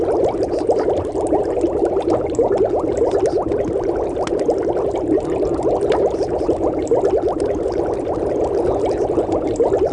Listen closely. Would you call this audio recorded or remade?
recorded